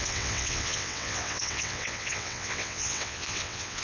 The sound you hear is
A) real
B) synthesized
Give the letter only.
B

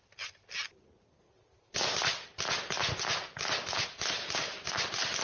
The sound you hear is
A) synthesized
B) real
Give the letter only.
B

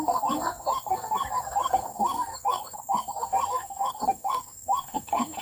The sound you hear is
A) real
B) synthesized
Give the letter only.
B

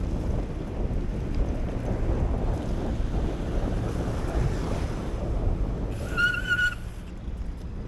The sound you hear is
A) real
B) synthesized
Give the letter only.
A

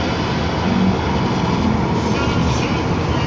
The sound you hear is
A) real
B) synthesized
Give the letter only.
A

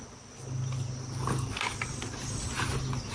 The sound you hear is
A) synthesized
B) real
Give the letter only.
B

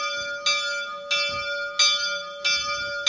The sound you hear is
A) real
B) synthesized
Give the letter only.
A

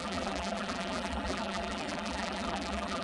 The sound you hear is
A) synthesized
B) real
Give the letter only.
A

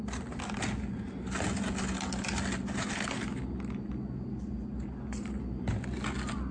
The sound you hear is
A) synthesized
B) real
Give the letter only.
B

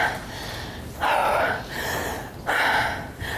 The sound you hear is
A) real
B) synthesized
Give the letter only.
A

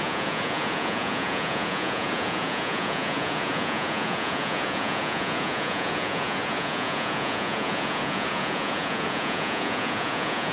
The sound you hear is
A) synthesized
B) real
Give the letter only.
A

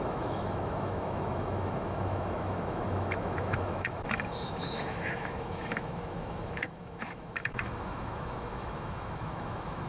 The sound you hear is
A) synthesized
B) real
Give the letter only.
A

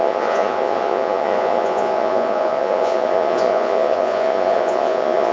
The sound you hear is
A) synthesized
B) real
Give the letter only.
A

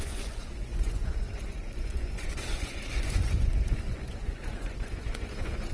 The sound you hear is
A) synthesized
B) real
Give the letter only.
A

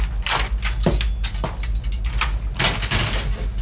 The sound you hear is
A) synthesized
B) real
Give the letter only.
B